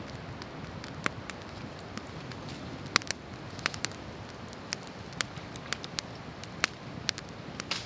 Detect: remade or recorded recorded